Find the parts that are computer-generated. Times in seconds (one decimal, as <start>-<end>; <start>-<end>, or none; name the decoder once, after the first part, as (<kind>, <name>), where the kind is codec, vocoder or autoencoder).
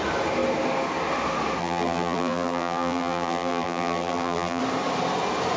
1.6-4.6 (vocoder, BigVGAN v2)